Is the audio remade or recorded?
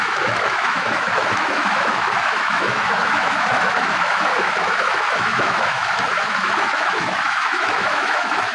remade